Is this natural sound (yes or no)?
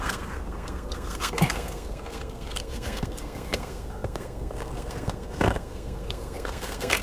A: no